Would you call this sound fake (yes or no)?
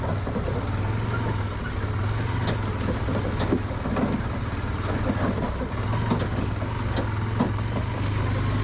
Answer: no